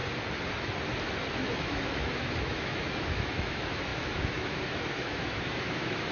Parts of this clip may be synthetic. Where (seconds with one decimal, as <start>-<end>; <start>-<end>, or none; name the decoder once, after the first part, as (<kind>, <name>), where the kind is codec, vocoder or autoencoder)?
1.3-6.1 (autoencoder, DAC-VAE)